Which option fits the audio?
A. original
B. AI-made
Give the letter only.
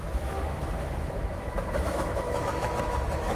B